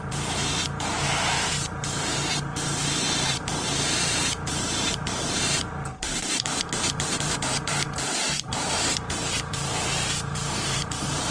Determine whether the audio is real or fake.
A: fake